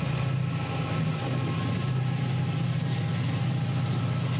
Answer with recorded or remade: recorded